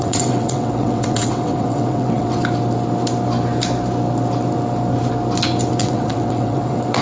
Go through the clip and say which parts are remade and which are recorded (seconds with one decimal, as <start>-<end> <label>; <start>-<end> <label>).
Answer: 0.0-2.4 remade; 2.4-5.8 recorded; 5.8-7.0 remade